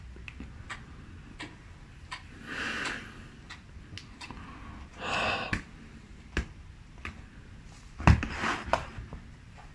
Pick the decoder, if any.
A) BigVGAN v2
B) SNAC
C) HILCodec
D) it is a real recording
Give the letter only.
D